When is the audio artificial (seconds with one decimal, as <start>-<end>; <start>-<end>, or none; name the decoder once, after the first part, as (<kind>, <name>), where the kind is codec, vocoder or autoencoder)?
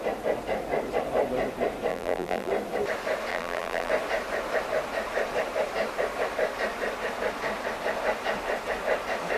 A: 1.9-2.5 (vocoder, BigVGAN v2); 3.3-3.9